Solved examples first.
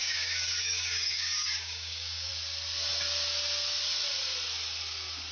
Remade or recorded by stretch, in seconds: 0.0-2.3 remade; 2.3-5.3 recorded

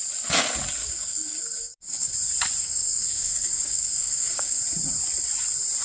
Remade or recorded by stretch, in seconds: 0.0-0.8 recorded; 0.8-2.1 remade; 2.1-2.6 recorded; 2.6-4.6 remade; 4.6-5.8 recorded

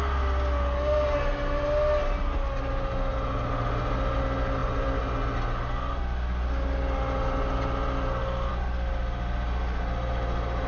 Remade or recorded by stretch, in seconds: 0.0-10.7 recorded

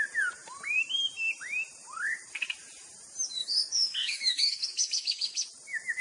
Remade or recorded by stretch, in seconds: 0.0-3.4 recorded; 3.4-5.5 remade; 5.5-6.0 recorded